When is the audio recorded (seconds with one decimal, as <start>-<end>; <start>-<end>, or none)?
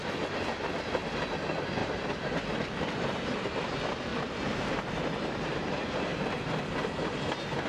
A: 0.0-1.8; 2.4-4.1; 6.6-7.7